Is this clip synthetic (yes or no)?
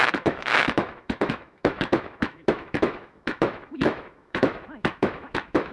yes